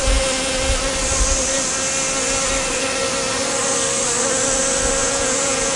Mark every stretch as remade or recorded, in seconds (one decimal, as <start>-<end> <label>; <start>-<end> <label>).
0.0-5.0 recorded; 5.0-5.8 remade